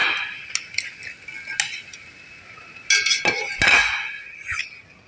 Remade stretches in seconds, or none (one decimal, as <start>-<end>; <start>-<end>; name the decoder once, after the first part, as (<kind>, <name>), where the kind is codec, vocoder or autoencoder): 3.8-4.6 (vocoder, Vocos)